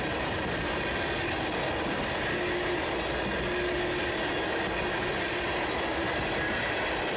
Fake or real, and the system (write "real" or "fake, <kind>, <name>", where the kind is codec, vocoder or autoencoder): real